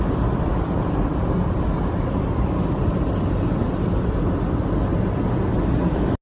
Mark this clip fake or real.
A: real